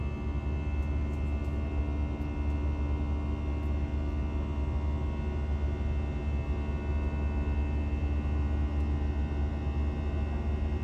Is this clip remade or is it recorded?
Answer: recorded